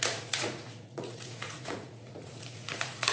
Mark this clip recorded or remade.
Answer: remade